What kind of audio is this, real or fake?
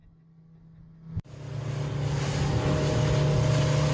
real